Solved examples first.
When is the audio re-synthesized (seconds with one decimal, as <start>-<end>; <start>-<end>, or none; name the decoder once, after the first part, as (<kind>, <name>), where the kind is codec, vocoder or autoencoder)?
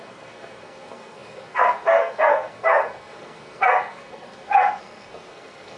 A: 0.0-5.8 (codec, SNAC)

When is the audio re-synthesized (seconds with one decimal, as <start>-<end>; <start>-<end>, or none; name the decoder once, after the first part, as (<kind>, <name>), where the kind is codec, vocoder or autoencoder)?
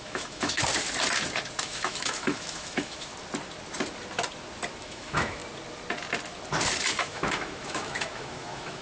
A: 0.0-0.6 (autoencoder, DAC-VAE); 1.6-3.1; 4.8-5.4; 7.0-8.8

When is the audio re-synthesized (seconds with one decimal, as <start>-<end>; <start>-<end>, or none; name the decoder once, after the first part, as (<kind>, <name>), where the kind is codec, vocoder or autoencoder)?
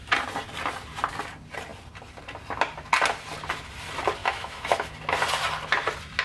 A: 4.2-4.9 (autoencoder, DAC-VAE)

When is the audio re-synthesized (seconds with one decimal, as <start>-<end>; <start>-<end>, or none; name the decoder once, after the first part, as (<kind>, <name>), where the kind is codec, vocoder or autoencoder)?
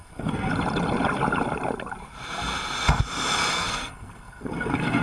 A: 0.0-0.5 (codec, SNAC); 3.5-5.0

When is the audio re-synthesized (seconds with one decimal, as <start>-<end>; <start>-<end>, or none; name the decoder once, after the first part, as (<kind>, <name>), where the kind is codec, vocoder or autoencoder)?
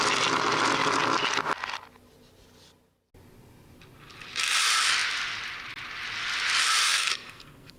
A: 6.9-7.8 (codec, SNAC)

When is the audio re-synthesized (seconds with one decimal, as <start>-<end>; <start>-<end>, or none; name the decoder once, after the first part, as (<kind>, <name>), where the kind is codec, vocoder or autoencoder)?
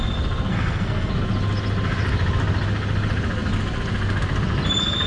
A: 0.5-1.1 (codec, SNAC)